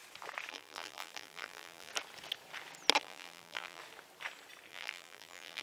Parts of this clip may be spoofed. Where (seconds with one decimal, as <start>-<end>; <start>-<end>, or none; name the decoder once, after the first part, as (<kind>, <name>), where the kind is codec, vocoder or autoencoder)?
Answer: 0.5-1.9 (vocoder, BigVGAN v2); 3.0-3.8; 4.7-5.6